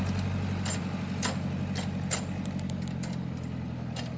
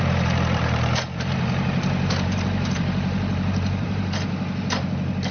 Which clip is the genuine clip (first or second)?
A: first